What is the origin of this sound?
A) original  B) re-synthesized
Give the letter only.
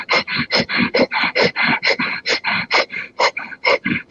B